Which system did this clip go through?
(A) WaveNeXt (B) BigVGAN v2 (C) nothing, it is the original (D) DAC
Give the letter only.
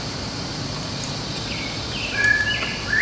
B